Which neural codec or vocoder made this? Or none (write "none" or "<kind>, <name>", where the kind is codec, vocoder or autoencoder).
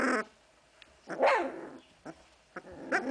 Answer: none